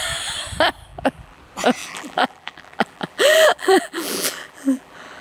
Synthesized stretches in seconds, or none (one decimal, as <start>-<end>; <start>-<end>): 0.9-1.4; 1.8-5.2